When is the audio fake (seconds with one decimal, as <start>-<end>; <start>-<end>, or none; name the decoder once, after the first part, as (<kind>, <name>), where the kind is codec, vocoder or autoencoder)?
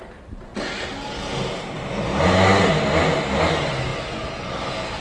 none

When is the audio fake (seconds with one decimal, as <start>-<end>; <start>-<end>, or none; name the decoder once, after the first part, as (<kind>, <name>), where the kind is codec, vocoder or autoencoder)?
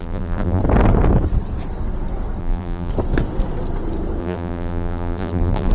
0.0-0.6 (vocoder, BigVGAN v2); 2.4-2.9; 4.2-5.7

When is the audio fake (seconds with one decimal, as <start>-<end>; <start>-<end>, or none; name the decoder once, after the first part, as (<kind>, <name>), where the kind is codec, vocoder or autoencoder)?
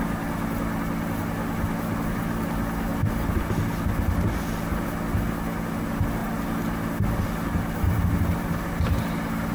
none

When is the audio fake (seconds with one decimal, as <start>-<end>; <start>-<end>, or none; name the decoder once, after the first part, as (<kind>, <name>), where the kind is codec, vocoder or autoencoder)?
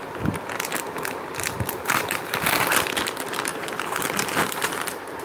3.0-5.2 (vocoder, BigVGAN v2)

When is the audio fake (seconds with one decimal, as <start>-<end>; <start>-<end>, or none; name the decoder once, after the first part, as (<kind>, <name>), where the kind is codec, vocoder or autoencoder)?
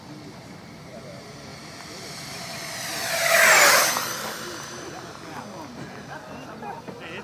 1.5-3.9 (vocoder, BigVGAN v2)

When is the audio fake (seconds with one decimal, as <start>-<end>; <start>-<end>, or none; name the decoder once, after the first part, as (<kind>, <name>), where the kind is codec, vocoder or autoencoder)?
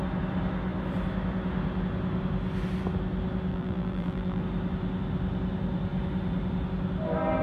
3.5-4.4 (vocoder, BigVGAN v2)